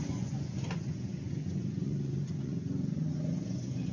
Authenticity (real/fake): fake